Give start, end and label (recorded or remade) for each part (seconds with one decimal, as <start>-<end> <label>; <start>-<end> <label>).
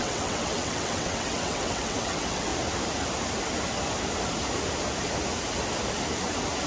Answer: 0.0-2.5 remade; 2.5-6.7 recorded